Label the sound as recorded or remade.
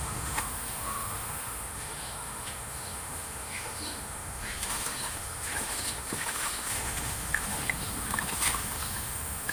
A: remade